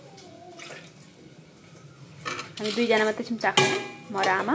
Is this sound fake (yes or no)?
no